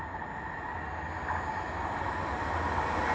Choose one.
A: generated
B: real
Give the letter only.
B